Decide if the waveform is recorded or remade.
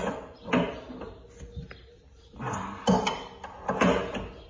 recorded